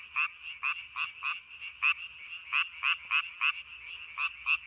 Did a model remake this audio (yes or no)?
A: no